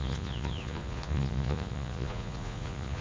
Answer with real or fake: fake